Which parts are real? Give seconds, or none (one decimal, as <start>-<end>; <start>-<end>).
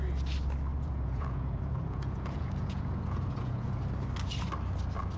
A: 0.0-0.7; 3.8-5.2